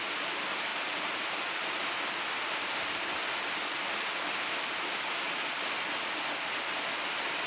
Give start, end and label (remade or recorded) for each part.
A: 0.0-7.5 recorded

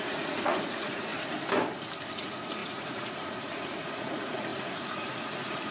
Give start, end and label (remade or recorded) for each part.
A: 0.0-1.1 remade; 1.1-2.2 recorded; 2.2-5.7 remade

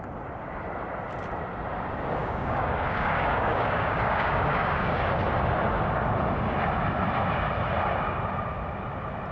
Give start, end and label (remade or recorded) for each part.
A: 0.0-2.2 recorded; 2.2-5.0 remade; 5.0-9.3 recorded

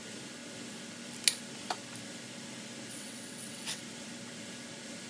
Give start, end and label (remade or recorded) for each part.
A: 0.0-2.9 recorded; 2.9-3.8 remade; 3.8-5.1 recorded

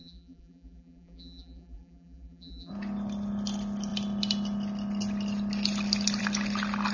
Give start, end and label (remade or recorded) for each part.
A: 0.0-2.7 remade; 2.7-6.9 recorded

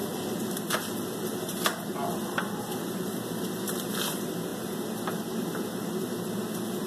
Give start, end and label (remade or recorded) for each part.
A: 0.0-6.9 recorded

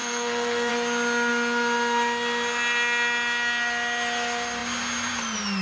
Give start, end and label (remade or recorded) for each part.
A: 0.0-0.7 remade; 0.7-5.6 recorded

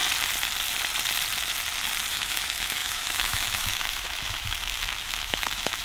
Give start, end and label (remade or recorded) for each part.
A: 0.0-2.1 recorded; 2.1-5.8 remade